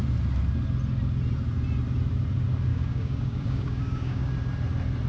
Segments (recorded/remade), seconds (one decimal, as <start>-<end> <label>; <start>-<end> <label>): 0.0-2.7 recorded; 2.7-4.3 remade; 4.3-5.1 recorded